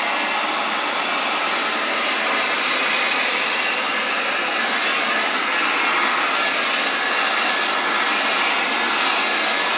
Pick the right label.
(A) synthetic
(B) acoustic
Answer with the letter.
B